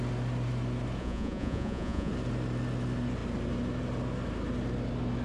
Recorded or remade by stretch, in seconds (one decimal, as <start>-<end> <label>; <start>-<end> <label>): 0.0-1.0 recorded; 1.0-2.1 remade; 2.1-5.2 recorded